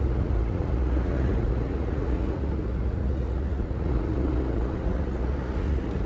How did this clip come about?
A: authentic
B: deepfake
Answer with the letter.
B